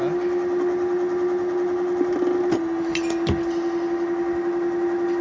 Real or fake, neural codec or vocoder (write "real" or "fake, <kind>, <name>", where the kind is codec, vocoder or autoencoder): real